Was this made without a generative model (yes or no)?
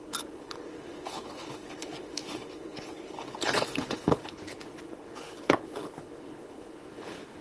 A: no